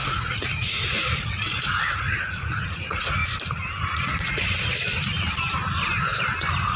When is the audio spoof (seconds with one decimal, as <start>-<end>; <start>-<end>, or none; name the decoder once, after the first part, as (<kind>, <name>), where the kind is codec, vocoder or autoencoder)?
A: 0.0-3.2 (vocoder, Vocos); 3.8-4.7